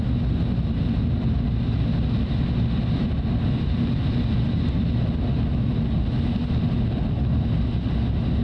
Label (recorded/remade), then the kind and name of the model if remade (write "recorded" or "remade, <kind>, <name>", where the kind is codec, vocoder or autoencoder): recorded